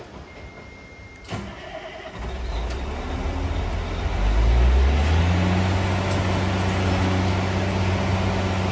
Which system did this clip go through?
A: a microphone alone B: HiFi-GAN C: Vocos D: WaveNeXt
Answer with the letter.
A